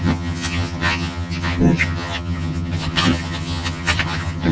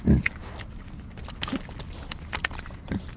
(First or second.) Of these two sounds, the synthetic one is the first